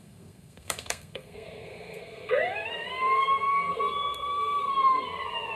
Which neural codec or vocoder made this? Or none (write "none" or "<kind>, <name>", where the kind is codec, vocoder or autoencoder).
codec, SNAC